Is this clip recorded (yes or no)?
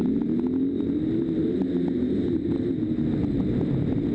yes